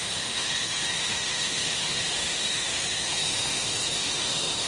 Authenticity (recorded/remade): remade